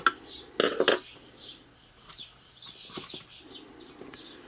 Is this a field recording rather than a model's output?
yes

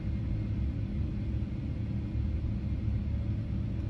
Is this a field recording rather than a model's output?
yes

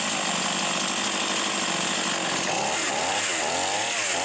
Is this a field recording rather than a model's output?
yes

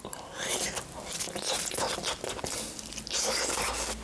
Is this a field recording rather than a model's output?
yes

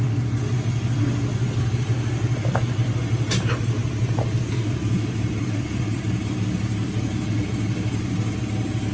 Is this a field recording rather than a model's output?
yes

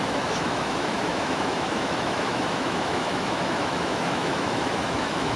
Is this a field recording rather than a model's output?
no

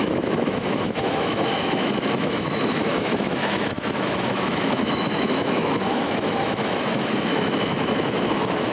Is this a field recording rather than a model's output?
no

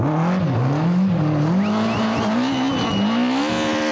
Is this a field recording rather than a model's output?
yes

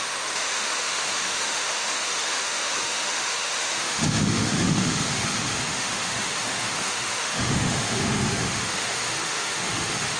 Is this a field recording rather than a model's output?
no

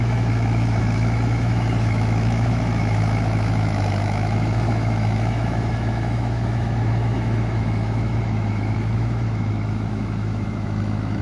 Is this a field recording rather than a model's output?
no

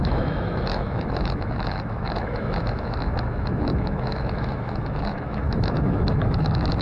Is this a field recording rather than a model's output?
no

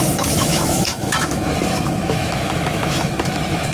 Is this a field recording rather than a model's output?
no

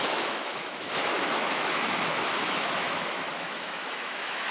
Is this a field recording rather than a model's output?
no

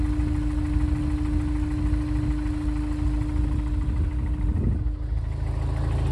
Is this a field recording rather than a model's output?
yes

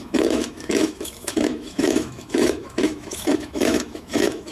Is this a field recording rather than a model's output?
no